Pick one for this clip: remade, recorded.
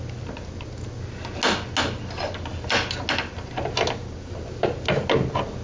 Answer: recorded